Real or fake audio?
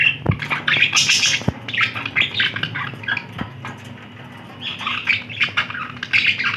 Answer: real